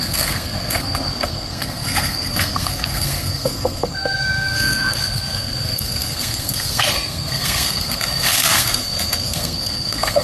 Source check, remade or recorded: remade